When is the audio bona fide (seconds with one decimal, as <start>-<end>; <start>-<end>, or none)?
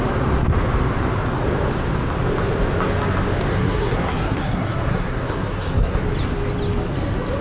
0.0-3.5; 6.0-7.4